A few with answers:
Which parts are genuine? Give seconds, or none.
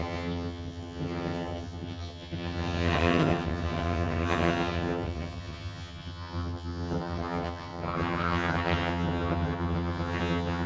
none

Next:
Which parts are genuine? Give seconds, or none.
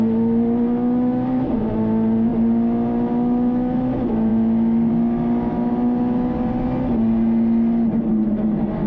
0.0-8.9